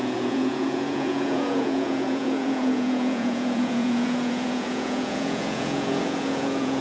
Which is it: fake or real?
fake